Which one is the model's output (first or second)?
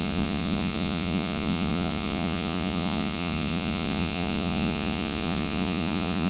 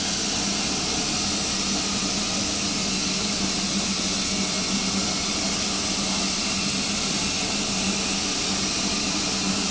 first